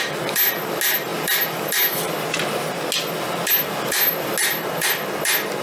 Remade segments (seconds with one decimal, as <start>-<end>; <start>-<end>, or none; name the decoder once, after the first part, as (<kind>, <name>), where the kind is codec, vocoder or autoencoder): none